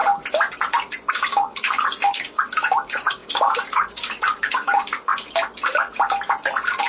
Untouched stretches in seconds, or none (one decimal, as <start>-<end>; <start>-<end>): 0.0-1.1; 5.1-6.9